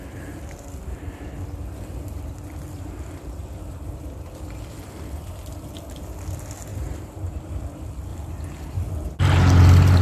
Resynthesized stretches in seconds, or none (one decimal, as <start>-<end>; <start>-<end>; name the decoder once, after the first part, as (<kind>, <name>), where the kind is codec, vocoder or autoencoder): 6.7-7.5 (vocoder, BigVGAN v2)